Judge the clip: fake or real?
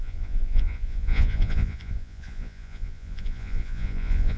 fake